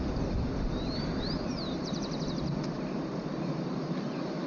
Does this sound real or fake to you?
real